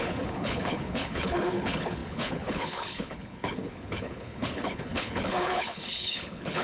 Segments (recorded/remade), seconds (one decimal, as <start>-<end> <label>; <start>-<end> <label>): 0.0-6.6 remade